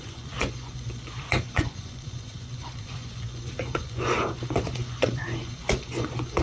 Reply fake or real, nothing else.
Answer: fake